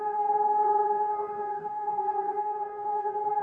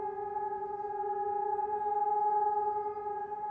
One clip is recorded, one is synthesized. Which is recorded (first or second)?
second